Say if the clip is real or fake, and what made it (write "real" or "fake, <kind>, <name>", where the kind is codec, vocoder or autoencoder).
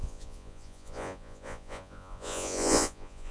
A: fake, vocoder, Vocos